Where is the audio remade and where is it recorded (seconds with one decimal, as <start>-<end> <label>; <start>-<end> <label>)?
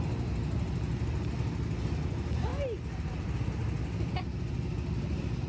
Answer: 0.0-5.5 recorded